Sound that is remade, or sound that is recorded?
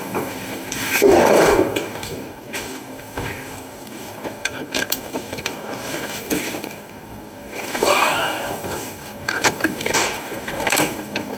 remade